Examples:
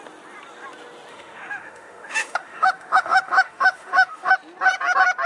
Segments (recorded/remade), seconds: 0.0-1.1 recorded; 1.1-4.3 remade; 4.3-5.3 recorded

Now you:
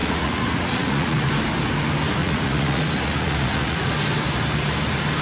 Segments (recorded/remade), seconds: 0.0-1.3 remade; 1.3-2.2 recorded; 2.2-3.9 remade; 3.9-5.2 recorded

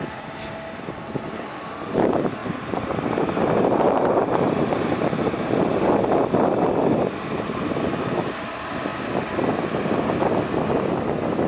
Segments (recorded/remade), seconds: 0.0-2.4 recorded; 2.4-5.5 remade; 5.5-11.5 recorded